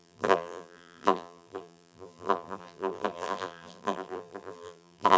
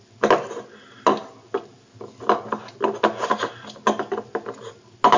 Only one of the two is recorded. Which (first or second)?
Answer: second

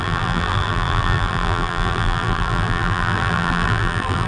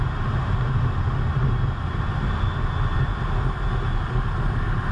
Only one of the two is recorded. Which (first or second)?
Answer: second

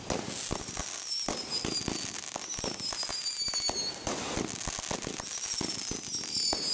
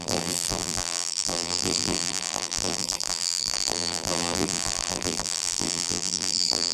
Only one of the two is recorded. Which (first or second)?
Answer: first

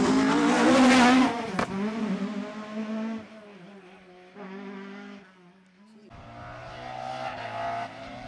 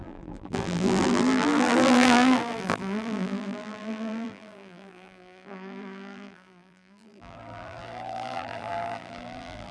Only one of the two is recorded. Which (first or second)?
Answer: first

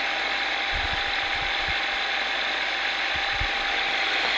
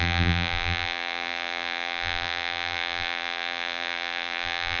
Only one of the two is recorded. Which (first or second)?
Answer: first